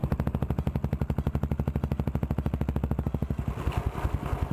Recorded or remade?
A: recorded